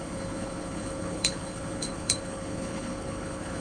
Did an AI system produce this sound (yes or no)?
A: yes